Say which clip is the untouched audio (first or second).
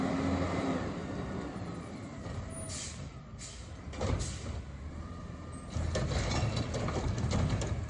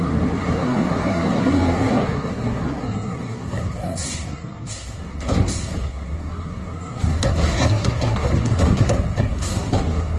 first